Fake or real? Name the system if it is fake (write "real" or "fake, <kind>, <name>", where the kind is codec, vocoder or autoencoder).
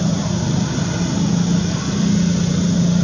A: real